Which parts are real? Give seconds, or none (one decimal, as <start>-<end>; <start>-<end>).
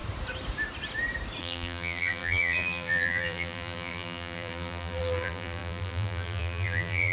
0.0-1.4